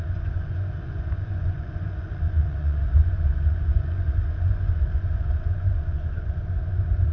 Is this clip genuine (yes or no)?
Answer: no